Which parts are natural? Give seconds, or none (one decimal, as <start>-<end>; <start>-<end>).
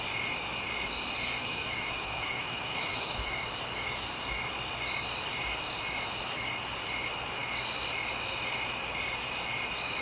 0.0-1.4; 3.4-10.0